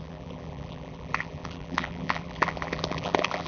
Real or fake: fake